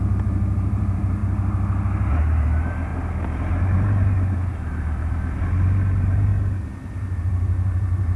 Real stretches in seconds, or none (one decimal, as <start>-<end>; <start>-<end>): 1.2-2.1; 6.3-7.2